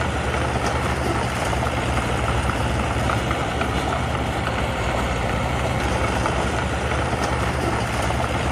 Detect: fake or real fake